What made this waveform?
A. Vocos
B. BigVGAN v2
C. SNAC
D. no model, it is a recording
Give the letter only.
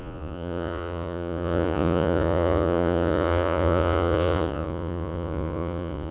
A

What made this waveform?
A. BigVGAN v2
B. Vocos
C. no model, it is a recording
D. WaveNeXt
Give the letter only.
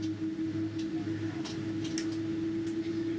C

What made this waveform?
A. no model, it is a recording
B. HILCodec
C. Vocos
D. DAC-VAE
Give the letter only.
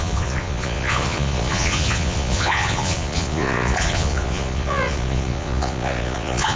C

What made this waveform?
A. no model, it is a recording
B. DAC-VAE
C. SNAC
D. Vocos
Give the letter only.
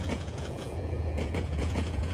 D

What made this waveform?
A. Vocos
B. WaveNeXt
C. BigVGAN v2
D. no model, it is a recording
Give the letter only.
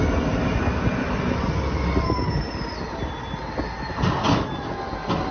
D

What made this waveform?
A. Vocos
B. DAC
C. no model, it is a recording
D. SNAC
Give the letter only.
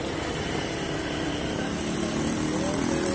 C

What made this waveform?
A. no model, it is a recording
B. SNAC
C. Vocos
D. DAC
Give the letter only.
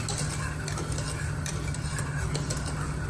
A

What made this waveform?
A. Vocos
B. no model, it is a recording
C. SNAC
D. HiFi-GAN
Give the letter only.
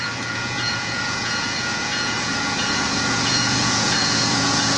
A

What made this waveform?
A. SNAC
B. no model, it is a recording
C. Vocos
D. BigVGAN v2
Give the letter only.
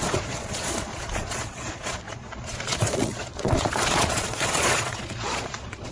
C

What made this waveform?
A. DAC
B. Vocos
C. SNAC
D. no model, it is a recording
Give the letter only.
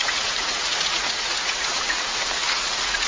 B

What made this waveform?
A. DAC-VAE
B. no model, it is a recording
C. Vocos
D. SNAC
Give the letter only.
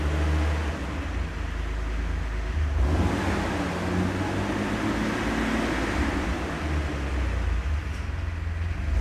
B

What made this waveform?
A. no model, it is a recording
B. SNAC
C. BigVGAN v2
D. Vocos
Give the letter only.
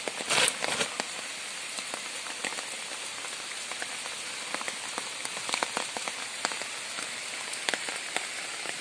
A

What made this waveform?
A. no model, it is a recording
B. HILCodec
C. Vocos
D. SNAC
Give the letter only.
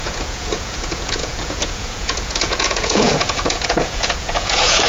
C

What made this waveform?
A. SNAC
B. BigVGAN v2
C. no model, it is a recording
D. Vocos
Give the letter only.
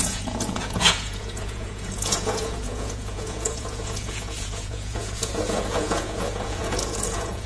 D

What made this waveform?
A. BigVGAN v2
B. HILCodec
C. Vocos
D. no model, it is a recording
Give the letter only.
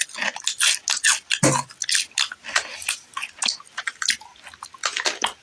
D